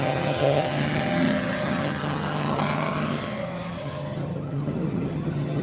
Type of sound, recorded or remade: remade